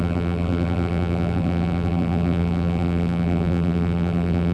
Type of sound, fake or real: fake